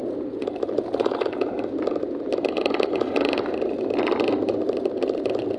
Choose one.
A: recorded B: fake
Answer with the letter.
A